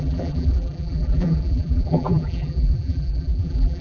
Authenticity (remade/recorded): remade